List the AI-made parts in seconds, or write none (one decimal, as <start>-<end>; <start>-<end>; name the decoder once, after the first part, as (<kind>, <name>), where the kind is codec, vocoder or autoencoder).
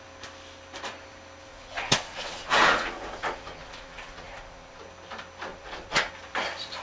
1.5-4.8 (vocoder, Vocos); 5.5-6.1